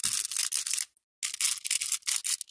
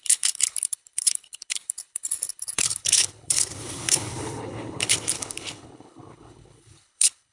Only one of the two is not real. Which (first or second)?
second